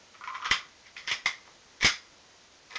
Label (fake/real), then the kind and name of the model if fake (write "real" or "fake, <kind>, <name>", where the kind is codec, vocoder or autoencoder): real